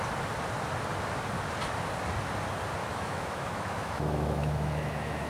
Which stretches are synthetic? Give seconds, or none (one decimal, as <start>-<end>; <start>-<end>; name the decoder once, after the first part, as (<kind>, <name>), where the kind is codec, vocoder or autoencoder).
2.8-5.3 (autoencoder, DAC-VAE)